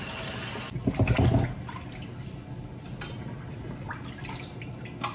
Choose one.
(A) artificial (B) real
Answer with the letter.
B